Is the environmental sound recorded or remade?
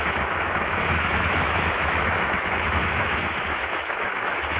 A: remade